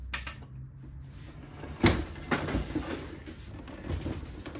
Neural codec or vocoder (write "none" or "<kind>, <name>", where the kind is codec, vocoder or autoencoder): none